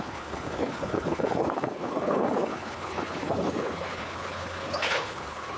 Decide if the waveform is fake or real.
fake